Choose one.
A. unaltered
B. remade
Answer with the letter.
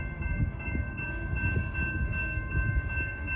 B